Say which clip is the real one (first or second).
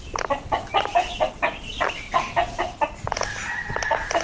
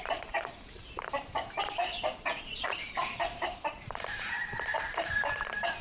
first